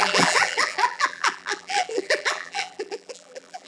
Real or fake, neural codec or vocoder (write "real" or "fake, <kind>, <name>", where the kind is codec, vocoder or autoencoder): fake, vocoder, BigVGAN v2